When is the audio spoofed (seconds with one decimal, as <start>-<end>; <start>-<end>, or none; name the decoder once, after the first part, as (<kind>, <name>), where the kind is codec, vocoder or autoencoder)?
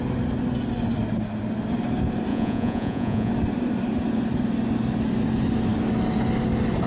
2.3-3.3 (vocoder, Vocos)